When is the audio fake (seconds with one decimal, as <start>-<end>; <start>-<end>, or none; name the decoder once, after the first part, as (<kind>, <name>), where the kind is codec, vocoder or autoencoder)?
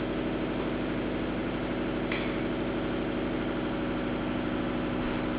0.0-5.4 (vocoder, BigVGAN v2)